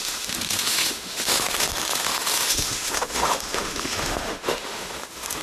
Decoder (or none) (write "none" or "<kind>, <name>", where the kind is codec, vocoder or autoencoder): autoencoder, DAC-VAE